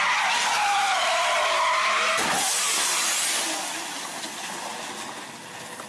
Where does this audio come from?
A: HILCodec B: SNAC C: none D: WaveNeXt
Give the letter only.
C